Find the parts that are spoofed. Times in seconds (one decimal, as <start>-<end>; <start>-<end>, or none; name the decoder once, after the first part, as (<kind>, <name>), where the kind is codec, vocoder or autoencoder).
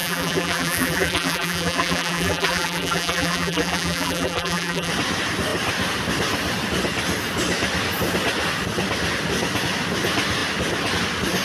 0.0-4.9 (vocoder, BigVGAN v2)